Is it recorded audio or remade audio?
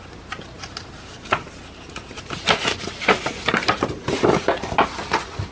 recorded